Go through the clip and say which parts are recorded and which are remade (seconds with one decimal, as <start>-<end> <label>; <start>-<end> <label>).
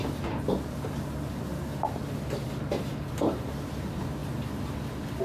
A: 0.0-5.2 recorded